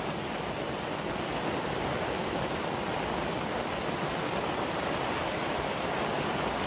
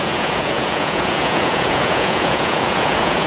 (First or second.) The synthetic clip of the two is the second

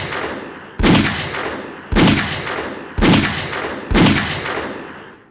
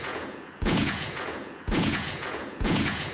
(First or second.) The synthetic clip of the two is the second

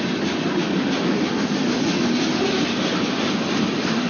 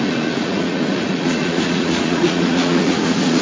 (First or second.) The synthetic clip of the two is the second